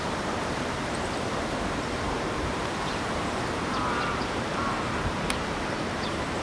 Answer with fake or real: fake